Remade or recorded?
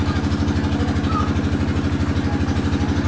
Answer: recorded